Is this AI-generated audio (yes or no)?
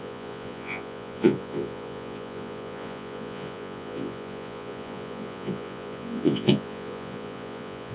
yes